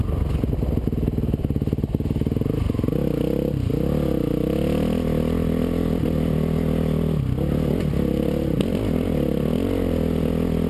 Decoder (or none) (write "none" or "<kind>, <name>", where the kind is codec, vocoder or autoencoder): none